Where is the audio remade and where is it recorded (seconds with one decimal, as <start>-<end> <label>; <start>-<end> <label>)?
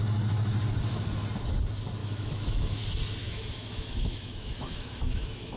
0.0-2.0 recorded; 2.0-2.8 remade; 2.8-3.2 recorded; 3.2-5.6 remade